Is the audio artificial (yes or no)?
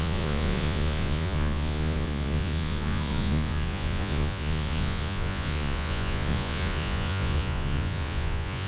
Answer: yes